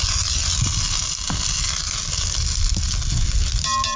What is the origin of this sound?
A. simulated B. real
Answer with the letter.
B